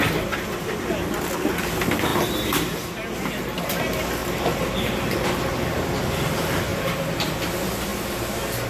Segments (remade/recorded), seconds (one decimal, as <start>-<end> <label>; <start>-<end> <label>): 0.0-4.2 recorded; 4.2-4.7 remade; 4.7-6.7 recorded; 6.7-7.4 remade; 7.4-8.7 recorded